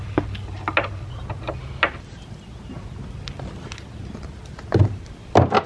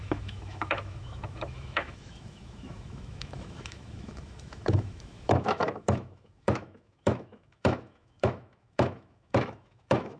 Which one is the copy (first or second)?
second